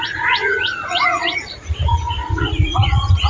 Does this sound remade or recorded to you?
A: remade